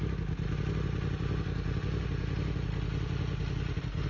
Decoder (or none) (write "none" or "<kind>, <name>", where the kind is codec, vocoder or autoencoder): none